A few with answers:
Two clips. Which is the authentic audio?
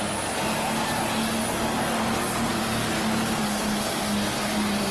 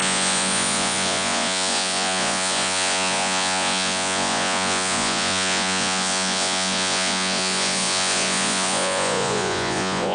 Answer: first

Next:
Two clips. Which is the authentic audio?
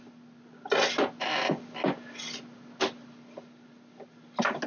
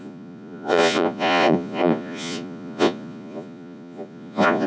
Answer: first